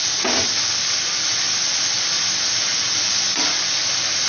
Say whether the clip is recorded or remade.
recorded